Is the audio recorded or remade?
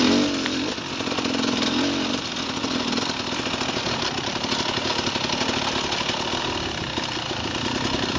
recorded